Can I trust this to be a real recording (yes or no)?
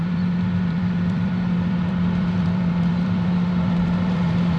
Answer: no